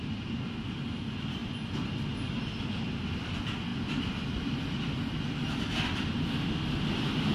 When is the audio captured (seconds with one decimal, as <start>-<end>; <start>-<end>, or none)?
0.0-7.3